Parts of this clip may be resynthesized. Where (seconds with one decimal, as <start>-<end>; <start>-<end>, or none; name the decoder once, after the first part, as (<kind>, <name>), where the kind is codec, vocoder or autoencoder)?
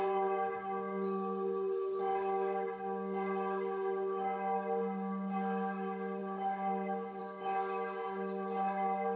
0.0-9.2 (codec, DAC)